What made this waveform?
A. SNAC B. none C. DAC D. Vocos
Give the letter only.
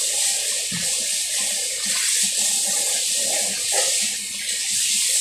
B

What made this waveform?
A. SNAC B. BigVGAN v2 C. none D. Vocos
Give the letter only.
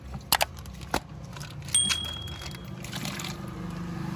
C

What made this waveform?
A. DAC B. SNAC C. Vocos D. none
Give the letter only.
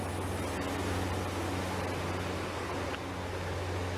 D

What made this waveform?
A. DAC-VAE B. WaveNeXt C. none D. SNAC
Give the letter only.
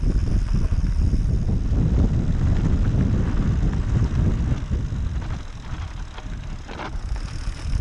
C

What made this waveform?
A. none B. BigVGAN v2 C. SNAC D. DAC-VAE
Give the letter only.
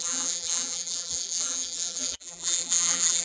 B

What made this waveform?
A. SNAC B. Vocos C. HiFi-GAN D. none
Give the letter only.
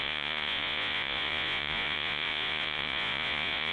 B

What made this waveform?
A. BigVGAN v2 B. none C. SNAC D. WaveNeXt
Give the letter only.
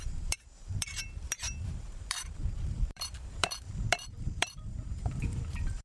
A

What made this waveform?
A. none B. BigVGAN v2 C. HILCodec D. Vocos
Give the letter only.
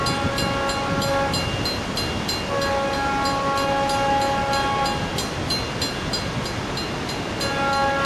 A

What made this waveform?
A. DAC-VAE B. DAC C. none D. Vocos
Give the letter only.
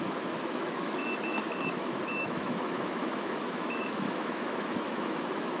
A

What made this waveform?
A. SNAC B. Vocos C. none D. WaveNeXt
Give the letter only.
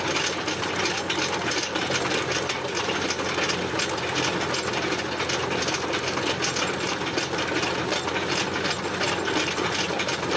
C